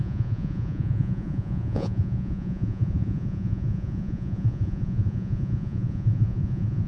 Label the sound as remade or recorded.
remade